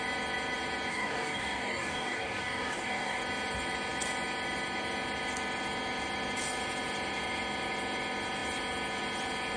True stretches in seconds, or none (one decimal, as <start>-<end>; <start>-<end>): 0.0-0.9; 3.2-9.6